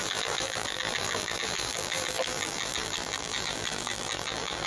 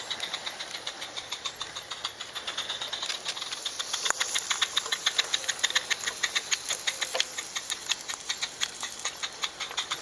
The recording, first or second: second